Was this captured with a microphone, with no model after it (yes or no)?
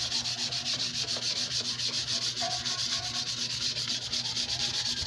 yes